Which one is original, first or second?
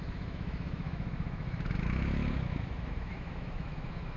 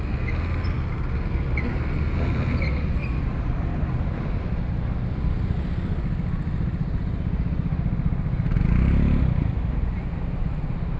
second